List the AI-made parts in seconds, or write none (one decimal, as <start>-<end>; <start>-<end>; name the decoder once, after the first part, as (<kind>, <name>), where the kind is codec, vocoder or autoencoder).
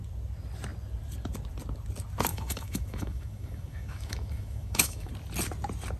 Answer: 2.3-5.1 (autoencoder, DAC-VAE)